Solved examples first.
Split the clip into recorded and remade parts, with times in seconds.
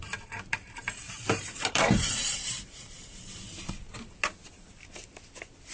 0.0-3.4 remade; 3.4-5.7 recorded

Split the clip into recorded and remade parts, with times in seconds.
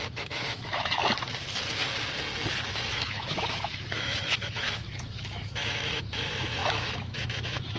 0.0-1.0 remade; 1.0-2.9 recorded; 2.9-7.8 remade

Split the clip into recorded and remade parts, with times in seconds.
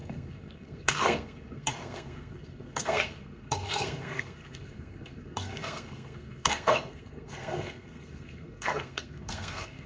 0.0-9.9 remade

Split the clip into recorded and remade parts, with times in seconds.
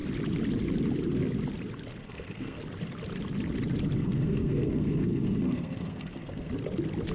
0.0-2.0 recorded; 2.0-2.6 remade; 2.6-4.0 recorded; 4.0-6.5 remade; 6.5-7.1 recorded